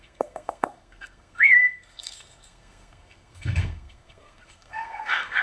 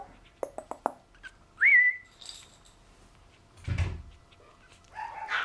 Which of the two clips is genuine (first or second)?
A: second